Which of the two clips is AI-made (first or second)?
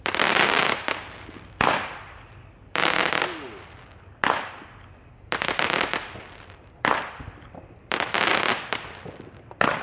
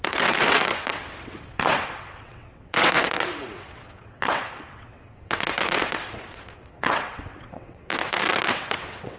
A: second